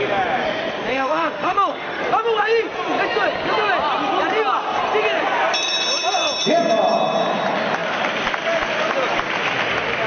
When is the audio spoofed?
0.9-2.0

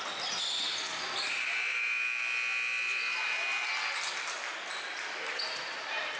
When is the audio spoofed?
none

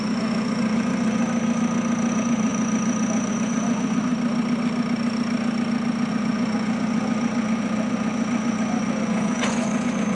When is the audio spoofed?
0.0-1.2; 2.1-4.1; 6.1-10.1